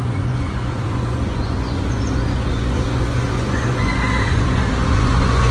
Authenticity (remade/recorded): remade